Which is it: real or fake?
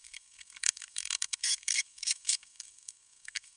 fake